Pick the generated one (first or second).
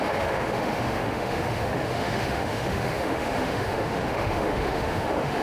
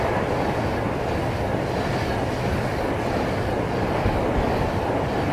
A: first